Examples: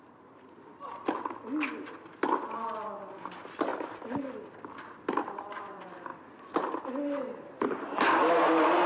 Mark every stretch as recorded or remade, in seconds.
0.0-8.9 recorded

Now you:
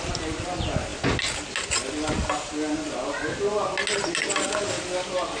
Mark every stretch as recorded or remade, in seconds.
0.0-5.4 recorded

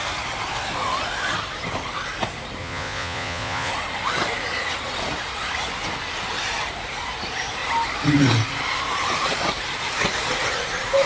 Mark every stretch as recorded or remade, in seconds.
0.0-2.6 recorded; 2.6-3.7 remade; 3.7-11.1 recorded

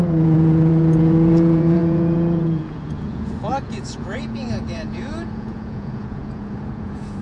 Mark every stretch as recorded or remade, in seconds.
0.0-7.2 remade

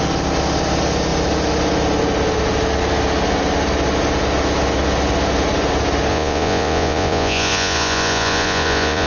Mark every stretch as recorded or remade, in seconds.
0.0-6.1 recorded; 6.1-9.1 remade

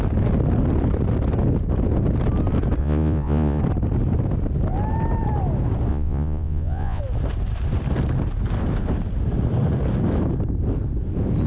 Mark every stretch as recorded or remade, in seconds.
0.0-2.8 recorded; 2.8-3.6 remade; 3.6-5.9 recorded; 5.9-7.0 remade; 7.0-11.5 recorded

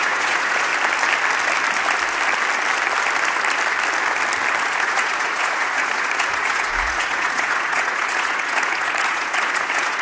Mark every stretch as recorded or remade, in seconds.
0.0-0.7 remade; 0.7-4.6 recorded; 4.6-10.0 remade

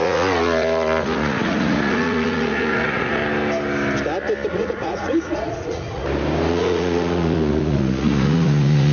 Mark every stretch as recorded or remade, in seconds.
0.0-3.2 remade; 3.2-4.5 recorded; 4.5-6.0 remade; 6.0-6.5 recorded; 6.5-8.9 remade